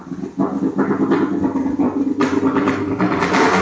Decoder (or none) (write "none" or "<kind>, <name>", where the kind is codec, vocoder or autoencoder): none